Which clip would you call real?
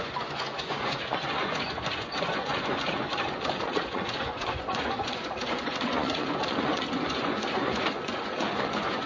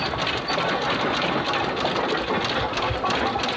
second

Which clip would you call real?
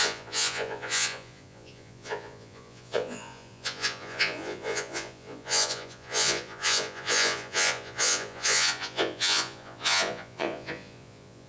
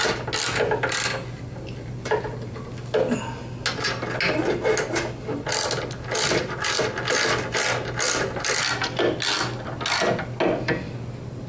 second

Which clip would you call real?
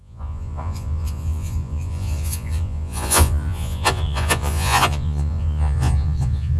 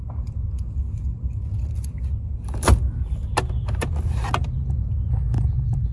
second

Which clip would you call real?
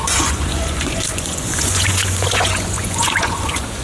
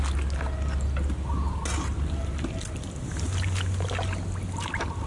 second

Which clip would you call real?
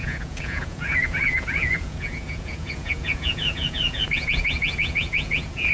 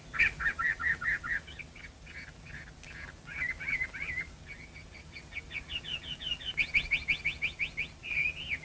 second